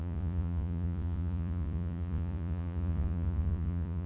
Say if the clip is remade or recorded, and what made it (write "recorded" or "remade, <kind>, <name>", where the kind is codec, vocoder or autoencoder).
remade, vocoder, Vocos